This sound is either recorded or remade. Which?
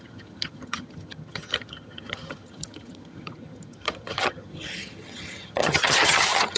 remade